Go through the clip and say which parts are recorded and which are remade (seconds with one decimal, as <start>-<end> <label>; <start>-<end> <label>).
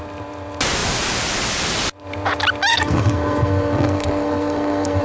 0.0-2.7 recorded; 2.7-5.0 remade